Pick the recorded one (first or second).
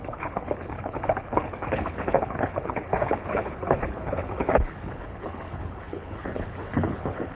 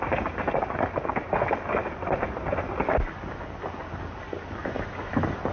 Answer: second